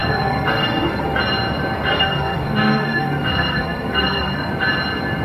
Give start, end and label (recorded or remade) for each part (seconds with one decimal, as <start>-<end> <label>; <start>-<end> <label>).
0.0-1.2 remade; 1.2-1.9 recorded; 1.9-4.5 remade; 4.5-5.2 recorded